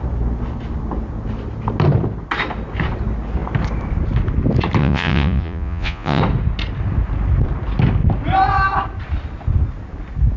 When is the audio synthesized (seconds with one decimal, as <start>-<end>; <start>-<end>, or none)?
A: 4.8-6.2